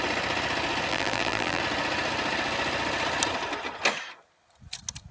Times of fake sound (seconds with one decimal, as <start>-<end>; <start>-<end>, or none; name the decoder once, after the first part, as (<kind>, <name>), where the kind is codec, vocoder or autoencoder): 0.9-1.6 (vocoder, BigVGAN v2)